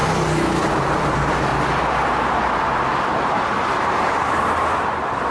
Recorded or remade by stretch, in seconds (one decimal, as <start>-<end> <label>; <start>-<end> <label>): 0.0-0.6 recorded; 0.6-1.5 remade; 1.5-2.3 recorded; 2.3-5.3 remade

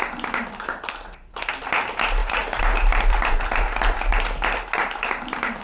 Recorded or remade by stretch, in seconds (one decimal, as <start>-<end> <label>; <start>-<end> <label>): 0.0-2.2 recorded; 2.2-5.6 remade

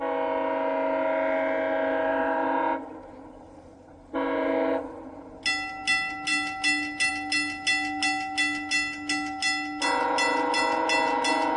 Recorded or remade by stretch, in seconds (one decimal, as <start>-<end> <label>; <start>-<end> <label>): 0.0-2.1 recorded; 2.1-5.4 remade; 5.4-11.6 recorded

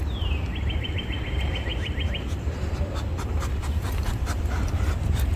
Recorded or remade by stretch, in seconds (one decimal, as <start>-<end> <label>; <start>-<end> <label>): 0.0-1.7 recorded; 1.7-4.9 remade; 4.9-5.4 recorded

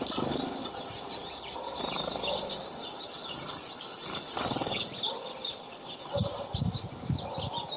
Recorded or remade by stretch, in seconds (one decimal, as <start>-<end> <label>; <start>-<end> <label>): 0.0-0.6 recorded; 0.6-1.8 remade; 1.8-7.8 recorded

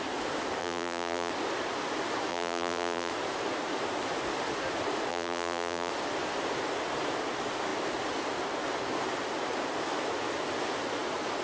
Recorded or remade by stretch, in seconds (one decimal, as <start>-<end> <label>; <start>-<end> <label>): 0.0-0.6 recorded; 0.6-1.3 remade; 1.3-2.3 recorded; 2.3-3.1 remade; 3.1-5.1 recorded; 5.1-5.9 remade; 5.9-11.4 recorded